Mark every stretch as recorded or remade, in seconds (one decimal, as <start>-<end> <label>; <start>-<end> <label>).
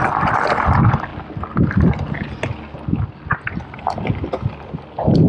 0.0-5.3 recorded